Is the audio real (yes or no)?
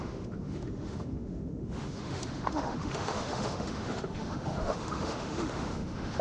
no